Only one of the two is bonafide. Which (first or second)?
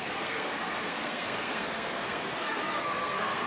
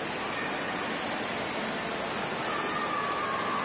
second